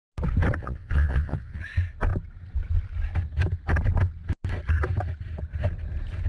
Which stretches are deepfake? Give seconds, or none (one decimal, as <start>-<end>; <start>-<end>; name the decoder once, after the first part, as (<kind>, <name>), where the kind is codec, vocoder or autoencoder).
0.6-1.6 (vocoder, Vocos)